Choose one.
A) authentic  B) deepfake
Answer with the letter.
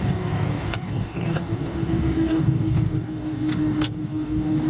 B